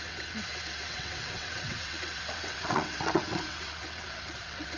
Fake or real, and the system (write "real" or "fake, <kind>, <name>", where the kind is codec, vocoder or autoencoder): fake, vocoder, WaveNeXt